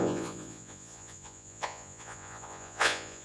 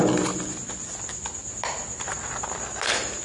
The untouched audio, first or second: second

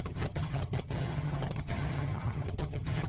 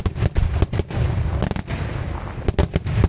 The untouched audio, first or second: second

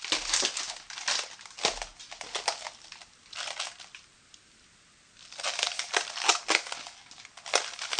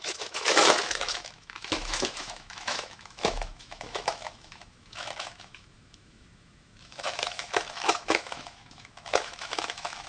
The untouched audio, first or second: first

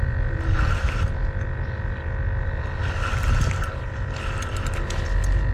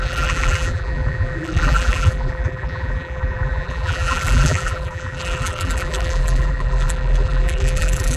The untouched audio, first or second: first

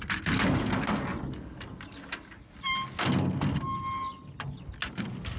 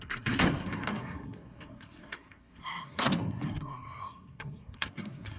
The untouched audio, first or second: first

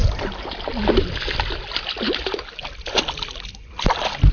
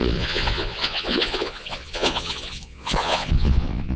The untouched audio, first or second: first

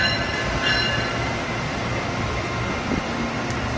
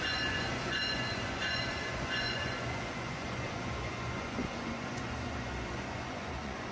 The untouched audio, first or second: first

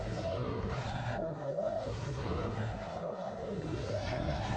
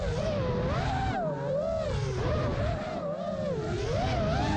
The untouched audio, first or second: second